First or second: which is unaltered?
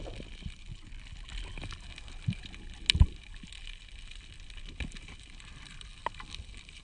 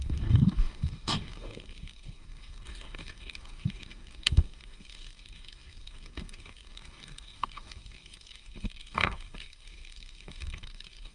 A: first